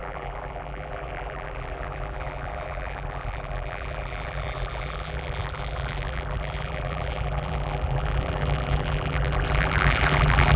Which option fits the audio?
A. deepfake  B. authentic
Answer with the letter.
A